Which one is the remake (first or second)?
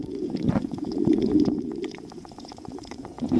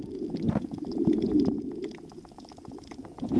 first